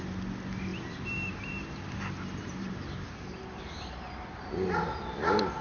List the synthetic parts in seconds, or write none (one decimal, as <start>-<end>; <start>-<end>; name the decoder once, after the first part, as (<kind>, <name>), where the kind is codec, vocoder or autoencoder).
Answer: 0.7-4.1 (vocoder, BigVGAN v2)